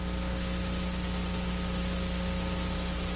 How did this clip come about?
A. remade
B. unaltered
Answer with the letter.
B